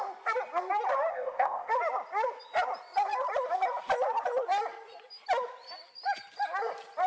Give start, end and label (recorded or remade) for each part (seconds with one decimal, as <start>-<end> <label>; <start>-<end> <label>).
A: 0.0-1.1 recorded; 1.1-1.7 remade; 1.7-7.1 recorded